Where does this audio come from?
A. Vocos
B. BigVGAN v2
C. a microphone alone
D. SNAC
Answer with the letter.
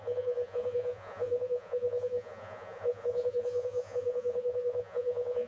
A